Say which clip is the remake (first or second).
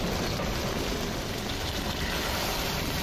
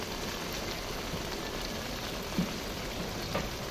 first